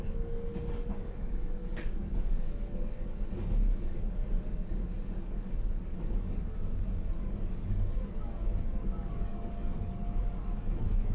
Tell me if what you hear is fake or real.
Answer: fake